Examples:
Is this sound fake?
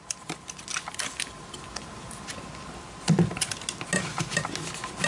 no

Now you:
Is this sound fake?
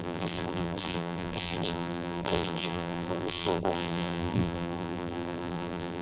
yes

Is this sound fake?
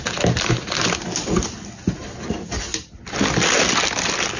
no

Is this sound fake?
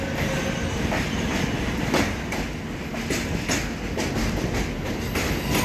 no